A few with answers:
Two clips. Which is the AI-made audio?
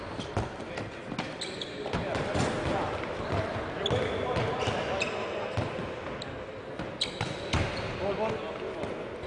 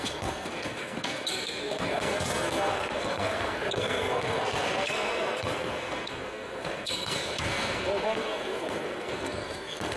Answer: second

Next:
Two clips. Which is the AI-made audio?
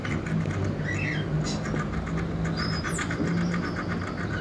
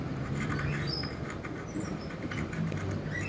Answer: second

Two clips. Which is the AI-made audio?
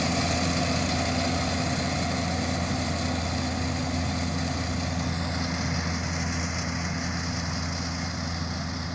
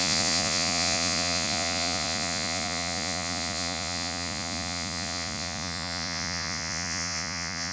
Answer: second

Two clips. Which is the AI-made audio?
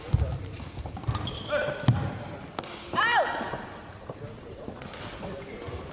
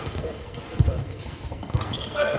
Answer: second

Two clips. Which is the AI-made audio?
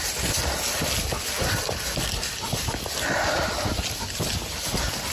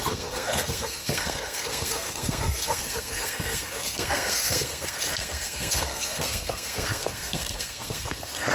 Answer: second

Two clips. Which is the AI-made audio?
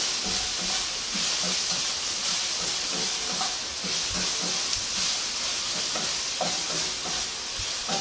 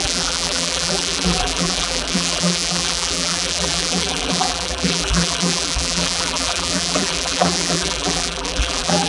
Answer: second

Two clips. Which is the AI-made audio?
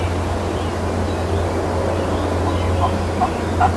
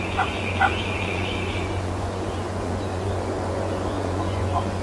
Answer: second